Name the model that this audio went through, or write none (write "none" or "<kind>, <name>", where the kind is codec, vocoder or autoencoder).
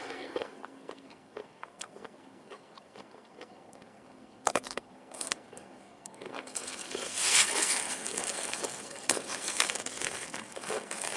codec, SNAC